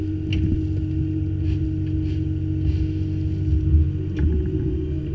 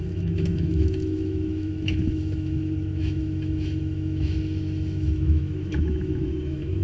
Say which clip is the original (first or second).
first